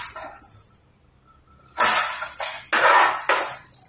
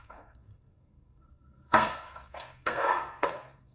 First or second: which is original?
first